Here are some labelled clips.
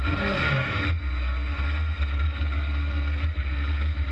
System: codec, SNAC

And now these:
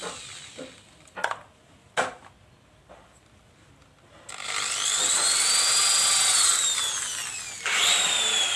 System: none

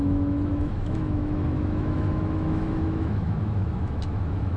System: autoencoder, DAC-VAE